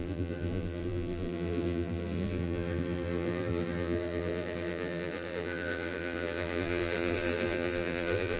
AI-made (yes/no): yes